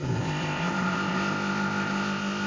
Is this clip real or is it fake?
fake